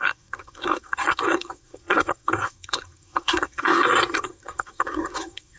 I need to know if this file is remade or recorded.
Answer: remade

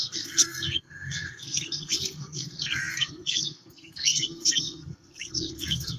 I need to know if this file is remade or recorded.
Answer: remade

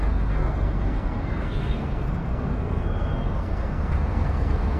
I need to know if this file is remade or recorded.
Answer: remade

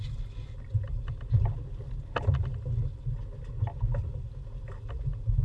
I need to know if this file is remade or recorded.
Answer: recorded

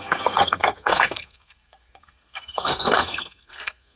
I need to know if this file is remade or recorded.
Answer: remade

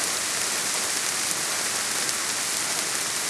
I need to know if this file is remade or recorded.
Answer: recorded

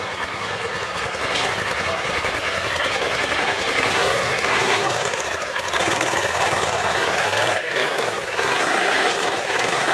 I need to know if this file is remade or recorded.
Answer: remade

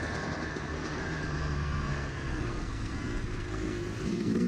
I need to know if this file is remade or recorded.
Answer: remade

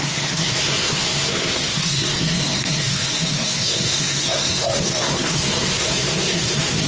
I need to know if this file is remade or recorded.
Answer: remade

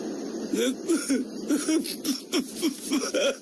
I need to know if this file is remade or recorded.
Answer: recorded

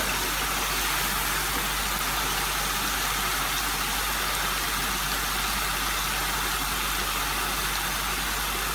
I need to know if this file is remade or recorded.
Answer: recorded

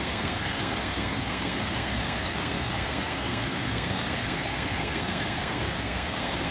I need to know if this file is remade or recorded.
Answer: remade